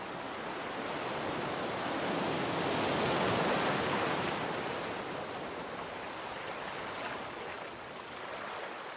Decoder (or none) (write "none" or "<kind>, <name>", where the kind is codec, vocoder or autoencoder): none